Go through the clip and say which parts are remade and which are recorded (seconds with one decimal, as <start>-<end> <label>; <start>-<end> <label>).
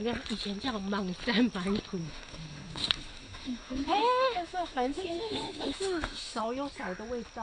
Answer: 0.0-2.0 recorded; 2.0-6.4 remade; 6.4-7.4 recorded